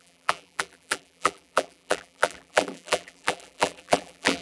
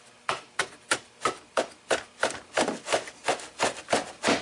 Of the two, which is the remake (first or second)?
first